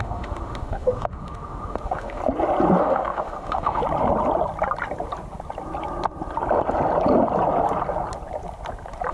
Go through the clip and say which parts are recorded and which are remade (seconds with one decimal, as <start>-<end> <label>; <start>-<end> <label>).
0.0-2.2 remade; 2.2-2.8 recorded; 2.8-3.8 remade; 3.8-9.1 recorded